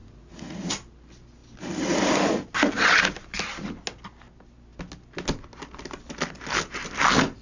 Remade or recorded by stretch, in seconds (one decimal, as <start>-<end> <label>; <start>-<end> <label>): 0.0-0.7 remade; 0.7-7.4 recorded